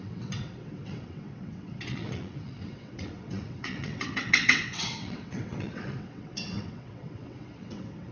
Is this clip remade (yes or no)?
yes